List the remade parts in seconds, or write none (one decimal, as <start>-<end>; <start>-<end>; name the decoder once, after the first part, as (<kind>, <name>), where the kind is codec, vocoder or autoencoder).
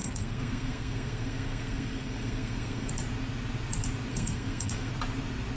0.0-2.9 (codec, SNAC); 4.1-4.9